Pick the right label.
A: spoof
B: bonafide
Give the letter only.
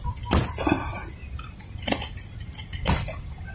B